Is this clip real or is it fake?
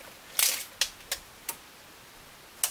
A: real